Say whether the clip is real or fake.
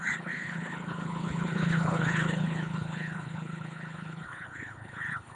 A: fake